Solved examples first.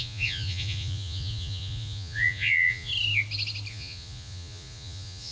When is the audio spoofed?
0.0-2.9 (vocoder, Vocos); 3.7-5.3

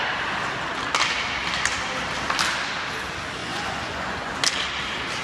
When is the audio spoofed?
3.4-4.3 (vocoder, Vocos)